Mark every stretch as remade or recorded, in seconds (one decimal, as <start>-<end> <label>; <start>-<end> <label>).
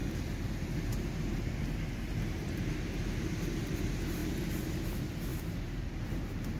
0.0-5.3 recorded; 5.3-6.6 remade